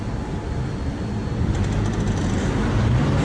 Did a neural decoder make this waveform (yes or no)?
no